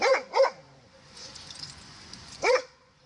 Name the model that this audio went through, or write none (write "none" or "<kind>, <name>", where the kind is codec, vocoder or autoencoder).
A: vocoder, Vocos